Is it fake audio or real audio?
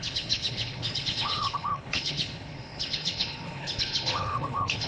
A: fake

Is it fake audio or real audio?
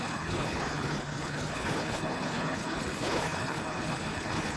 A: fake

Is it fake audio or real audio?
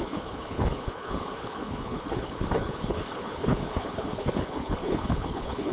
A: fake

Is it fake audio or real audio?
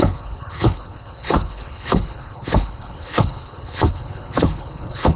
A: fake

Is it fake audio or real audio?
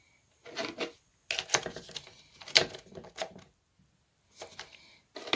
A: real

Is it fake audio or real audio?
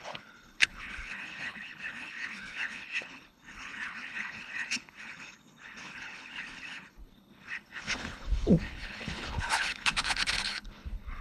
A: fake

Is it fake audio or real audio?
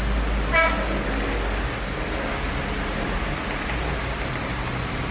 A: real